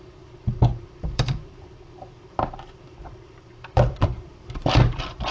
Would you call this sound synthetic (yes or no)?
yes